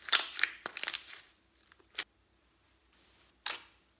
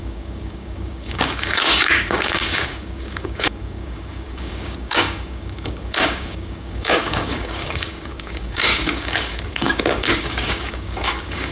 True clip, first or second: first